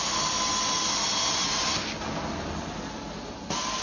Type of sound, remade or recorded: recorded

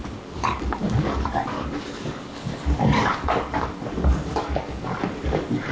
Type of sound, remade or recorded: remade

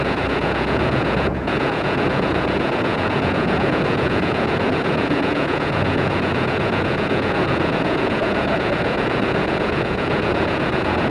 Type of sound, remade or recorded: remade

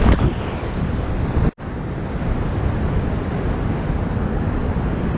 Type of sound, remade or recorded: remade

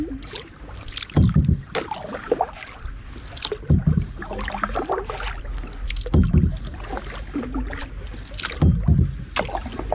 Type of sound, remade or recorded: recorded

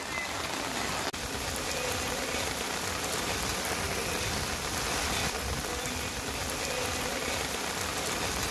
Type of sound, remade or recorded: recorded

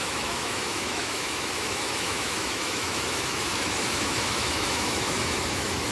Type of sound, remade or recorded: remade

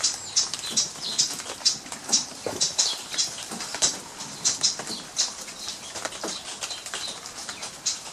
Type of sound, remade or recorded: recorded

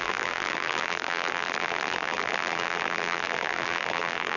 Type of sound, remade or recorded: remade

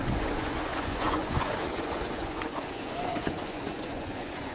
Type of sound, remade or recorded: remade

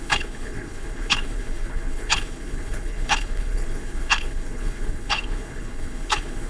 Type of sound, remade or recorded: remade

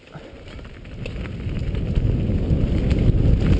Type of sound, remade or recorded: recorded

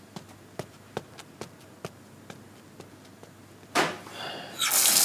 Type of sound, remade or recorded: recorded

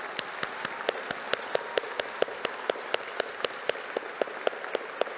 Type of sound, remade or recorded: recorded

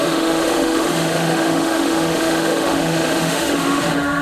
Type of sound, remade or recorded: remade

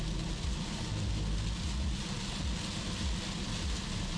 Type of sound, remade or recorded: recorded